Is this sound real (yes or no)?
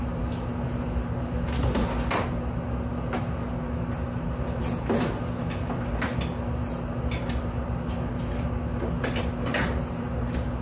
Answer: yes